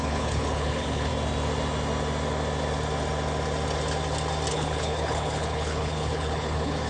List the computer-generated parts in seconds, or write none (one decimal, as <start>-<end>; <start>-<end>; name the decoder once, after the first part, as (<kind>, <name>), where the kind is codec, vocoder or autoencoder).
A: 0.0-1.1 (codec, HILCodec); 4.5-6.9